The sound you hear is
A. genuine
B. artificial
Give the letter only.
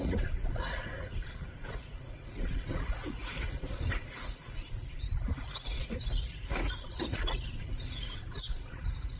B